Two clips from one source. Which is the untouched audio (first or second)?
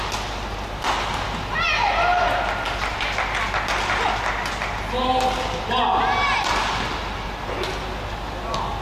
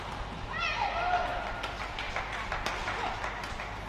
first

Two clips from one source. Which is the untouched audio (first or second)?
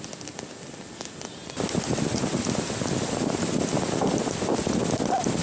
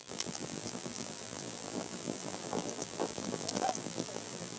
first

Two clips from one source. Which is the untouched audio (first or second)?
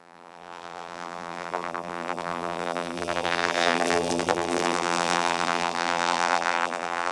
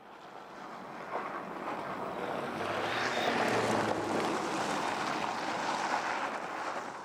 second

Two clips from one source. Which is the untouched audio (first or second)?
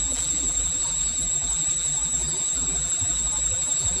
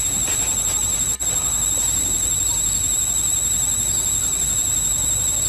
second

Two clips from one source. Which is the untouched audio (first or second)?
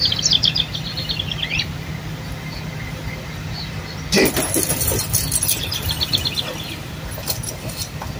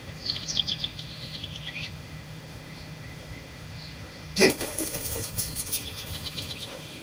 first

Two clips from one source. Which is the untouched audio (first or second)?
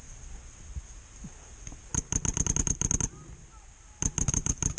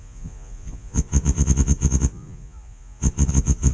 first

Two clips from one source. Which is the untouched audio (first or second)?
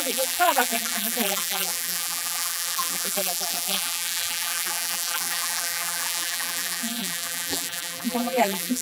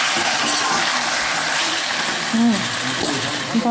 second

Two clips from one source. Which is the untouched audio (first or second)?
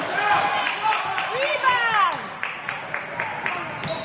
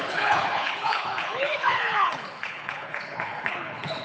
first